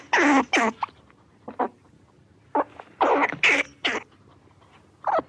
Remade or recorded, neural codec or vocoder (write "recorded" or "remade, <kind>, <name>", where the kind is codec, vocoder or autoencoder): recorded